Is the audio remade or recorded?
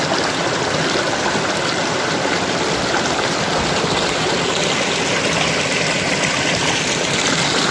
recorded